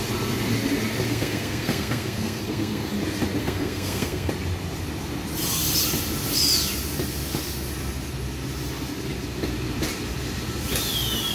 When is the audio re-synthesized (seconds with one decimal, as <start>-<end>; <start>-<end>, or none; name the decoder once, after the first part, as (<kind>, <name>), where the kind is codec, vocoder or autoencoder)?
1.1-2.9 (codec, SNAC); 3.4-4.3